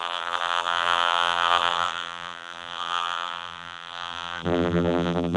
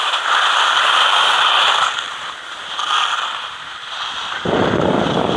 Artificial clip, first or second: first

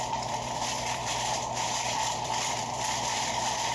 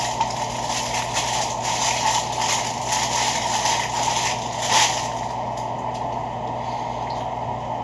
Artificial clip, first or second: first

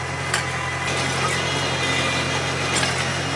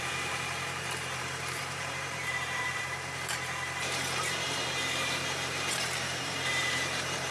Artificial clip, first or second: second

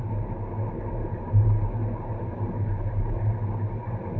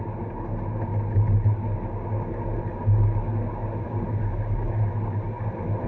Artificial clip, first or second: first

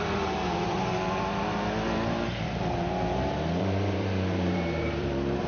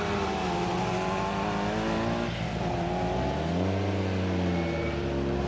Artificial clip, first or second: first